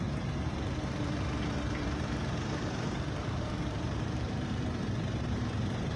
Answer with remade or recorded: remade